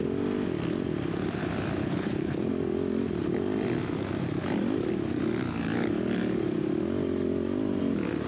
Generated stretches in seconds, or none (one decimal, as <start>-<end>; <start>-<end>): 1.8-2.5